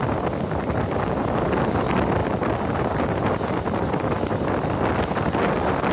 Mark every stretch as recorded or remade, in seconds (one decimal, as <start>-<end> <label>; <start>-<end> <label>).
0.0-5.9 recorded